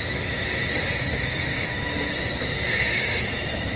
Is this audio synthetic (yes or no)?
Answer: yes